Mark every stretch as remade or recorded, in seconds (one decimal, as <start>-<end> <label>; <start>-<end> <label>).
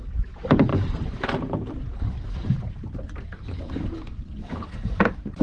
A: 0.0-0.7 recorded; 0.7-2.0 remade; 2.0-3.6 recorded; 3.6-5.4 remade